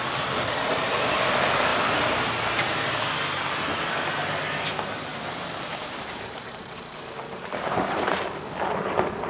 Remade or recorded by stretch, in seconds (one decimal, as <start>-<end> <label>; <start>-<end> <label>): 0.0-1.7 recorded; 1.7-2.7 remade; 2.7-5.1 recorded; 5.1-8.1 remade; 8.1-9.3 recorded